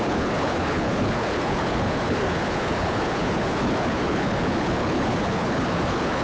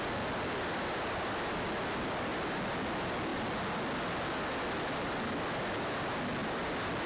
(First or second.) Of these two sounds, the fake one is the first